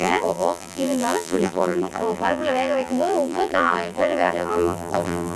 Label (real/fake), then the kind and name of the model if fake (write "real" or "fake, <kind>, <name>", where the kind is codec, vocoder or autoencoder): fake, vocoder, BigVGAN v2